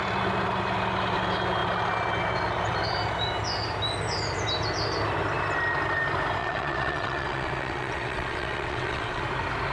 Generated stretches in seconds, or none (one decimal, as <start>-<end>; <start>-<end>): 6.4-9.2